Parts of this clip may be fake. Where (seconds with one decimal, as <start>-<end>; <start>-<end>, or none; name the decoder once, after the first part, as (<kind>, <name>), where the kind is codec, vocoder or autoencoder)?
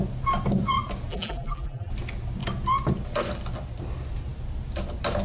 1.1-1.9 (vocoder, BigVGAN v2)